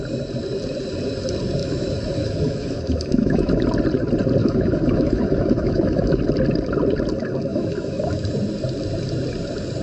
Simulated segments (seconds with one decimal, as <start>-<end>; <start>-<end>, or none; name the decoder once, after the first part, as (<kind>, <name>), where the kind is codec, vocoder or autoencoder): 1.6-3.6 (autoencoder, DAC-VAE); 4.4-6.2; 7.5-8.3

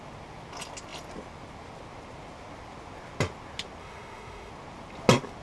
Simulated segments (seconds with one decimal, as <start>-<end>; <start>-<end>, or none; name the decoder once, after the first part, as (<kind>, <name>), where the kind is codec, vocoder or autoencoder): 3.8-4.5 (autoencoder, DAC-VAE)

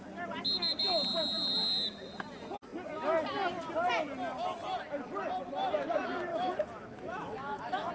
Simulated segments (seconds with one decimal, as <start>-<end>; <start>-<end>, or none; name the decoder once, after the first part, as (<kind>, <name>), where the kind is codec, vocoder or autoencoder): 6.3-7.9 (autoencoder, DAC-VAE)

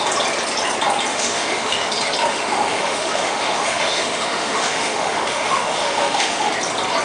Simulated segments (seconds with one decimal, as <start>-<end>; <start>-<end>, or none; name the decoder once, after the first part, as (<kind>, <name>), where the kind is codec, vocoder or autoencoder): 1.1-1.9 (autoencoder, DAC-VAE); 2.3-6.5

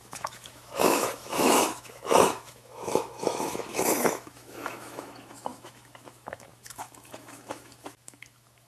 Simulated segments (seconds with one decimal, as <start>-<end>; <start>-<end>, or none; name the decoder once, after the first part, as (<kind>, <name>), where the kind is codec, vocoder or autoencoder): 0.0-8.7 (autoencoder, DAC-VAE)

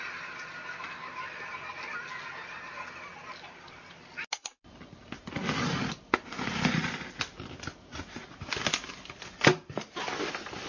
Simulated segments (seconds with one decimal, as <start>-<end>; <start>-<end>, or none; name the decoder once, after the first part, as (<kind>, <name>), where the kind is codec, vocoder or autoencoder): none

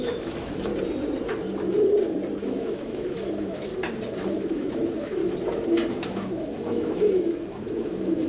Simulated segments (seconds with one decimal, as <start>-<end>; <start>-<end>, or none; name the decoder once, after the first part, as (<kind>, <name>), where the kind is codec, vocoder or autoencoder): 0.0-0.7 (autoencoder, DAC-VAE); 2.4-3.7; 4.4-5.2; 5.9-8.3